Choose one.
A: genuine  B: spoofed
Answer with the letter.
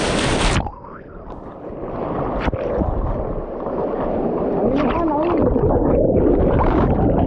A